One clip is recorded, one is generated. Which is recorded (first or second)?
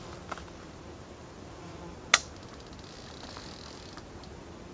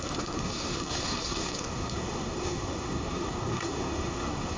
first